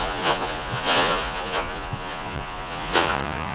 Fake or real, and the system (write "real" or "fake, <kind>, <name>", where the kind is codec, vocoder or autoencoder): fake, vocoder, Vocos